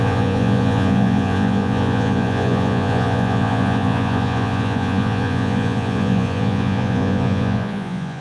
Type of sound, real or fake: fake